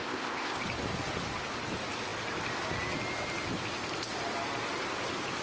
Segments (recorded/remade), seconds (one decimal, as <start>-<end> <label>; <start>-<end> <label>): 0.0-0.6 remade; 0.6-5.4 recorded